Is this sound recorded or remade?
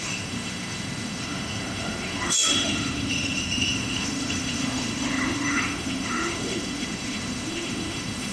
remade